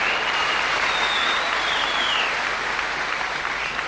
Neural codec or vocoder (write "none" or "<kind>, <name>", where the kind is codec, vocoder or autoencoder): none